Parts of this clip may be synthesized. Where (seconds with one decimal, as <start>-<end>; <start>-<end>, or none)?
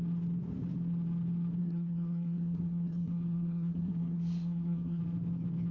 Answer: 1.6-5.0